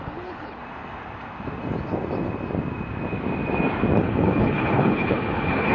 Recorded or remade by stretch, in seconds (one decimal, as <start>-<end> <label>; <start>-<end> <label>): 0.0-0.6 remade; 0.6-4.0 recorded; 4.0-5.7 remade